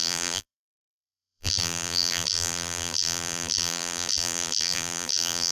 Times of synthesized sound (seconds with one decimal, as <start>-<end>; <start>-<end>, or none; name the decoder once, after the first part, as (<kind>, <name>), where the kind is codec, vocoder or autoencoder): 0.0-5.5 (vocoder, BigVGAN v2)